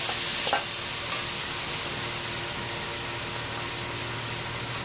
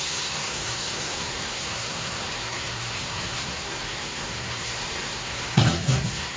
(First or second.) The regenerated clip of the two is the second